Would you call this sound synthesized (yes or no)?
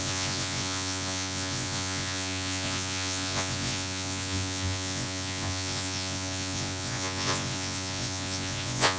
yes